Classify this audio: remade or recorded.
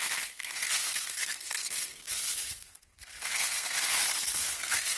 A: remade